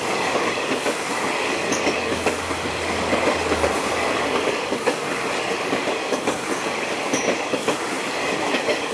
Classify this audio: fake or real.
fake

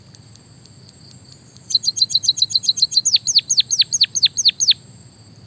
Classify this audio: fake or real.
real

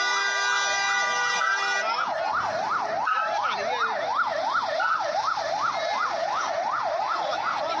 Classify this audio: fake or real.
real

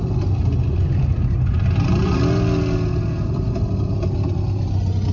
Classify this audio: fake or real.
real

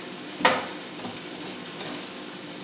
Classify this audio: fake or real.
real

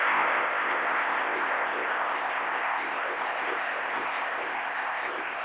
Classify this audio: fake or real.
fake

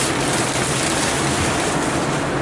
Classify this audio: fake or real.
real